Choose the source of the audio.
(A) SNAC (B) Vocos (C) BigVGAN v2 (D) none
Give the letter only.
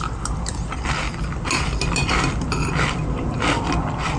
D